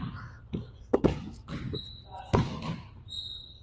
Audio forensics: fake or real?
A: real